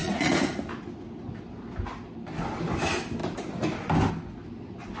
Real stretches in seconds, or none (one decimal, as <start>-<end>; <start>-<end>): 0.7-5.0